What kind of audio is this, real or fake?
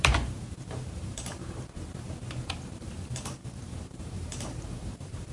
fake